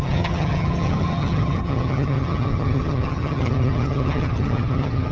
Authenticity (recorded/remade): remade